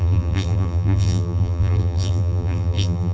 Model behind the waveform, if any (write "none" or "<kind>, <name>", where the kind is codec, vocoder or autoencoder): vocoder, BigVGAN v2